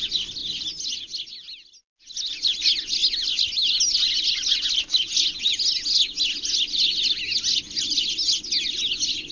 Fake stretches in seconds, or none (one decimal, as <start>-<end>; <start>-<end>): none